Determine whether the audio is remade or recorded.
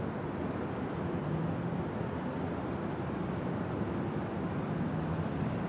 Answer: recorded